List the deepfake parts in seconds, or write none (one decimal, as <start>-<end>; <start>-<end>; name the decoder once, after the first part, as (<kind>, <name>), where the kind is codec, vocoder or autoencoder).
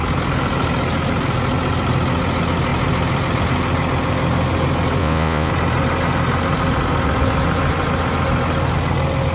5.0-5.5 (vocoder, Vocos)